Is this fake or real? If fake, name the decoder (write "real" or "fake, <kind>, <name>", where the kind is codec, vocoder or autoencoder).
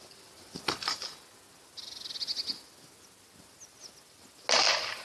real